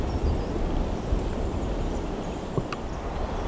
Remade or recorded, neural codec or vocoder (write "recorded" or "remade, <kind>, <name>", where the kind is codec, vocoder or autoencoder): recorded